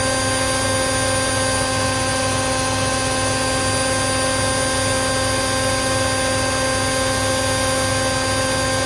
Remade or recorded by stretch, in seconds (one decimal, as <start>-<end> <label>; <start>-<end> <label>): 0.0-8.9 recorded